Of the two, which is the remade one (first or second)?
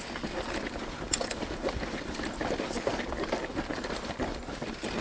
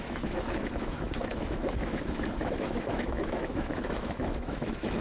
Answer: second